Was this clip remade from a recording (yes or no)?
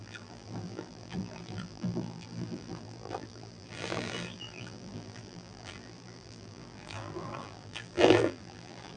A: yes